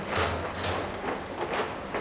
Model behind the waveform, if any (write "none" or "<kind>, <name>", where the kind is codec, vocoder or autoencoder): none